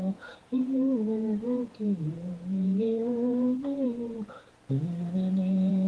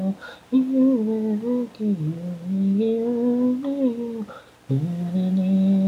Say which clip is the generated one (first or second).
first